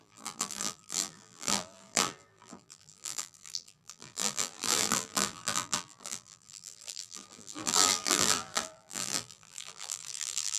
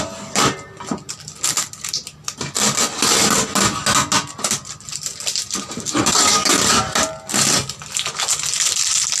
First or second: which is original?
second